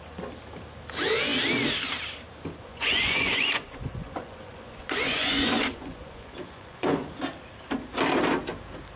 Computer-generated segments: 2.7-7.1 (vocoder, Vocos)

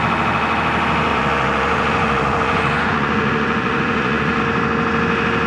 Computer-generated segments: 1.1-4.4 (vocoder, Vocos)